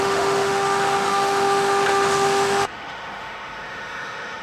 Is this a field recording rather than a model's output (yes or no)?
no